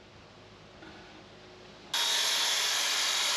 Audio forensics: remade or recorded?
recorded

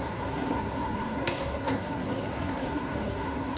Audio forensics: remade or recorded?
remade